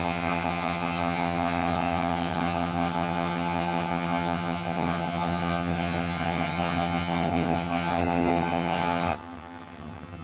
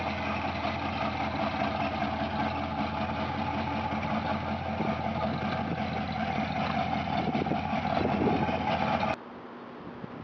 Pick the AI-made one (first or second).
first